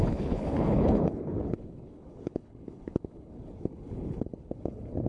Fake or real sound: fake